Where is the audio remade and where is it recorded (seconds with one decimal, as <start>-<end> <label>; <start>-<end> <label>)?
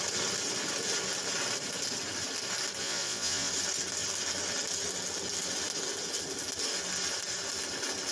0.0-2.8 recorded; 2.8-3.5 remade; 3.5-8.1 recorded